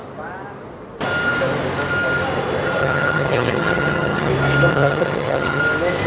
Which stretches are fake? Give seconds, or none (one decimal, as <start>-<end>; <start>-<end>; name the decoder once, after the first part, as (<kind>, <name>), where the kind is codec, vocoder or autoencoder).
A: 2.8-4.3 (vocoder, HiFi-GAN); 4.7-5.6